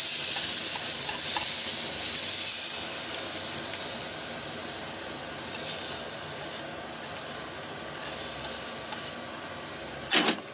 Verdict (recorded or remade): recorded